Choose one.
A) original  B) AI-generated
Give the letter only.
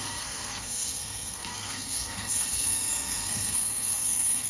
B